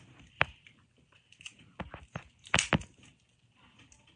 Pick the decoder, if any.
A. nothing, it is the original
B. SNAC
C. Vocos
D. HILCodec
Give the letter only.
A